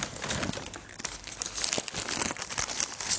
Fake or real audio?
real